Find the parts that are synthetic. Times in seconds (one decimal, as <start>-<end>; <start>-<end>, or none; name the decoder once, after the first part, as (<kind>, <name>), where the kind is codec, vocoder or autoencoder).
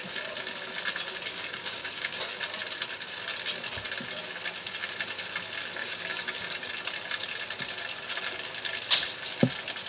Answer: 1.3-2.2 (codec, DAC); 5.8-6.7